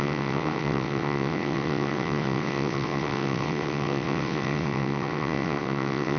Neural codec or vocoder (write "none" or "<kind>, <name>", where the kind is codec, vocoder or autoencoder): vocoder, WaveNeXt